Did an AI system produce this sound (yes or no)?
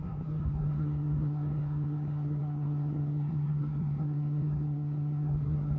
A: yes